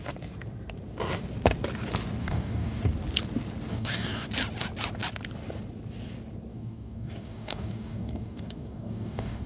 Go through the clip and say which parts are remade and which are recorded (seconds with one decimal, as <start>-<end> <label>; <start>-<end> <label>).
0.0-2.2 recorded; 2.2-2.8 remade; 2.8-3.7 recorded; 3.7-4.3 remade; 4.3-6.5 recorded; 6.5-9.5 remade

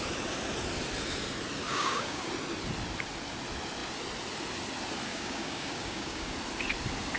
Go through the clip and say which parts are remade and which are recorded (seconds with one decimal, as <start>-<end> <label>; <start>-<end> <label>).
0.0-1.7 recorded; 1.7-2.3 remade; 2.3-5.1 recorded; 5.1-6.3 remade; 6.3-7.2 recorded

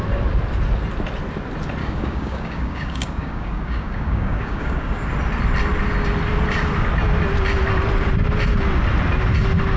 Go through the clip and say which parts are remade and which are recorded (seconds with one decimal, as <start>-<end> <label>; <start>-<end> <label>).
0.0-1.8 recorded; 1.8-5.1 remade; 5.1-9.8 recorded

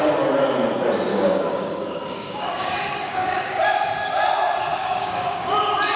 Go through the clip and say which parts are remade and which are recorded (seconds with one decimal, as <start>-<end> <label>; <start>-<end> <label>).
0.0-1.1 recorded; 1.1-3.6 remade; 3.6-4.8 recorded; 4.8-5.6 remade; 5.6-6.0 recorded

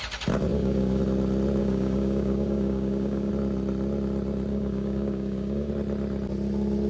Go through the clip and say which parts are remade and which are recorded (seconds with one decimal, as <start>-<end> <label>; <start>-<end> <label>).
0.0-0.5 recorded; 0.5-1.0 remade; 1.0-1.6 recorded; 1.6-3.3 remade; 3.3-4.5 recorded; 4.5-5.7 remade; 5.7-6.9 recorded